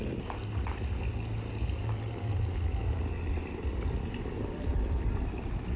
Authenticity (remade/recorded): recorded